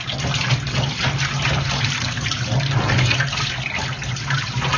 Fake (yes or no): no